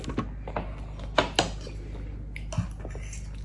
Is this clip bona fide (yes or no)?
yes